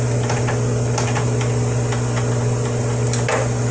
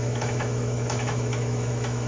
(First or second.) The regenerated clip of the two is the second